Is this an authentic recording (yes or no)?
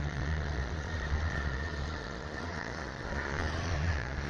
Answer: no